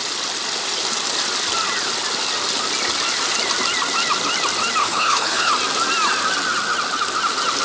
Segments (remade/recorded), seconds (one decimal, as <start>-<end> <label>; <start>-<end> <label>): 0.0-4.8 recorded; 4.8-5.5 remade; 5.5-7.6 recorded